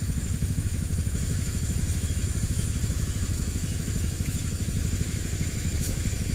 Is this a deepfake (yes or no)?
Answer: yes